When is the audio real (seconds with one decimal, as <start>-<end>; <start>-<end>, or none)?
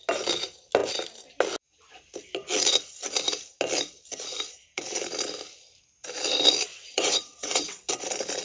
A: 0.0-6.7; 7.9-8.4